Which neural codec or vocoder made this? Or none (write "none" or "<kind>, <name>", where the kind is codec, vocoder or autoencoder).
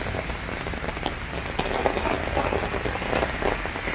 none